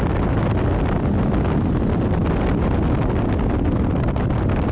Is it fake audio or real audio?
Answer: real